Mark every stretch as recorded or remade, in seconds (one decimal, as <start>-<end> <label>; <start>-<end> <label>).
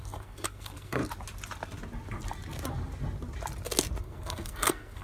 0.0-1.0 remade; 1.0-4.0 recorded; 4.0-5.0 remade